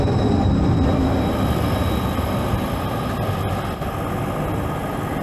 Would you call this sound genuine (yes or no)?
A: yes